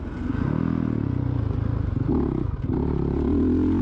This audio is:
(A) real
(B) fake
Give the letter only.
A